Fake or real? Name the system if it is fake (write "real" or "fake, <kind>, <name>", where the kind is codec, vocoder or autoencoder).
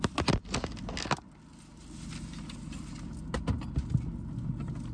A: real